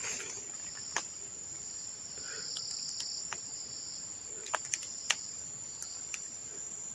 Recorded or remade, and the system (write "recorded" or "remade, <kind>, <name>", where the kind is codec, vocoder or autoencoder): recorded